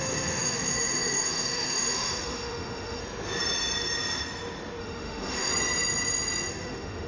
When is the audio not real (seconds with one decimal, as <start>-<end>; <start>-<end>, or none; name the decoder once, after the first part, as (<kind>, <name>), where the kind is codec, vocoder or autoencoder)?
0.0-3.0 (autoencoder, DAC-VAE); 4.8-5.5; 6.5-7.1